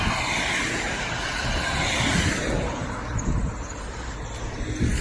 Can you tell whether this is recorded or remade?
recorded